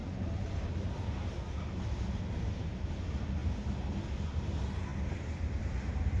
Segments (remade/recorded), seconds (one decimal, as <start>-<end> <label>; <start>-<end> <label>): 0.0-6.2 recorded